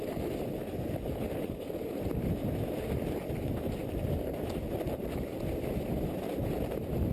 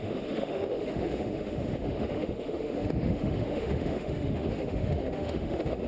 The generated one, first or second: second